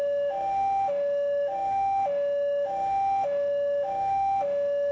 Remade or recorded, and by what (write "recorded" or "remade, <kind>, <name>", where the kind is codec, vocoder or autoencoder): remade, autoencoder, DAC-VAE